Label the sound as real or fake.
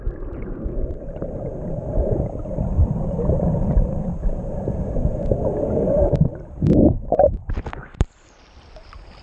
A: fake